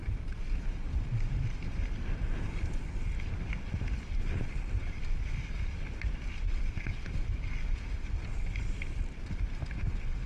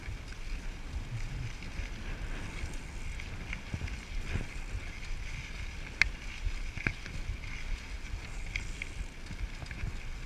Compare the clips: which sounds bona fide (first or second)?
second